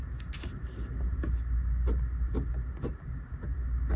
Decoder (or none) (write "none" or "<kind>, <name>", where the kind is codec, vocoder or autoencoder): none